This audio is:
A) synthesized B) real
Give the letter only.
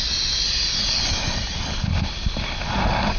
B